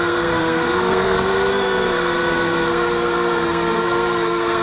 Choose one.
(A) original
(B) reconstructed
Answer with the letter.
B